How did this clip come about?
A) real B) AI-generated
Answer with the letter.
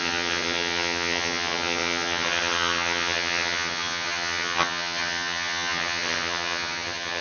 B